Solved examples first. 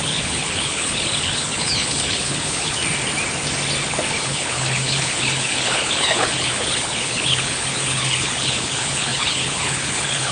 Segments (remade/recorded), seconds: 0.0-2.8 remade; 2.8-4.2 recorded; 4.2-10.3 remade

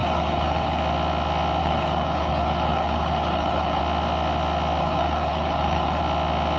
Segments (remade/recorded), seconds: 0.0-0.8 remade; 0.8-1.6 recorded; 1.6-3.8 remade; 3.8-4.8 recorded; 4.8-6.0 remade; 6.0-6.6 recorded

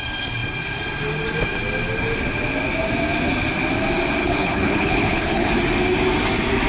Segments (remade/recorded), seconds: 0.0-4.2 recorded; 4.2-5.5 remade; 5.5-6.7 recorded